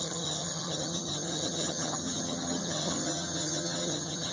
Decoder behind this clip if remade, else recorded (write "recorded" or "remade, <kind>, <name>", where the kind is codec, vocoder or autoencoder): remade, vocoder, HiFi-GAN